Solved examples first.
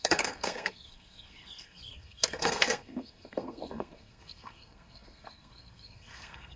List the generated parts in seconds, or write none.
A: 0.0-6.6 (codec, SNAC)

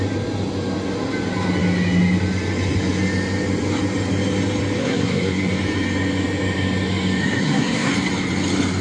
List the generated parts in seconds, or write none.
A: 4.8-5.5 (codec, SNAC); 7.2-7.9

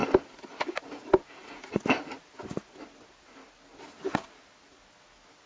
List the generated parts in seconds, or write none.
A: none

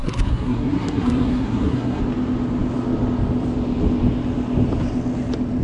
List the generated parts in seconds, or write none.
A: 0.0-2.0 (codec, SNAC)

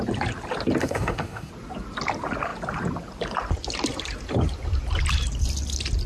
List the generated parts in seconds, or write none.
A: 0.8-1.5 (codec, SNAC)

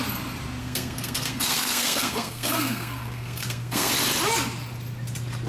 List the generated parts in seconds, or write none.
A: 0.6-3.9 (codec, SNAC)

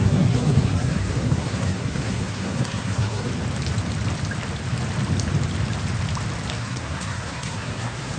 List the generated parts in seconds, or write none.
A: 0.0-3.3 (codec, SNAC); 6.6-8.2

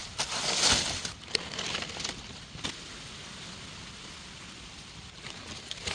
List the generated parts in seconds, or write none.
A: none